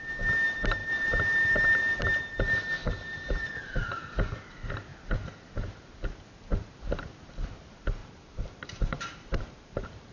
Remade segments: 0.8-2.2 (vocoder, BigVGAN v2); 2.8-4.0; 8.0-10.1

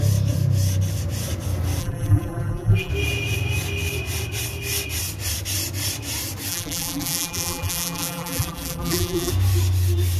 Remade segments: 1.8-2.9 (vocoder, BigVGAN v2); 6.5-9.3

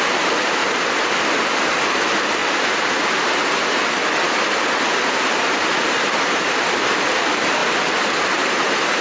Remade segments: 0.0-2.4 (vocoder, BigVGAN v2); 4.9-7.6; 8.4-9.0

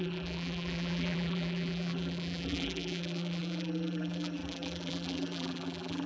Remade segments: 0.0-6.1 (vocoder, BigVGAN v2)

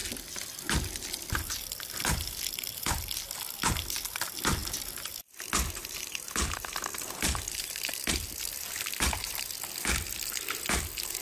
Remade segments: 0.0-2.9 (vocoder, BigVGAN v2); 4.6-5.2; 6.9-7.9

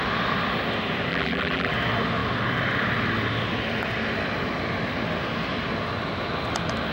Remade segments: 1.1-1.7 (vocoder, BigVGAN v2)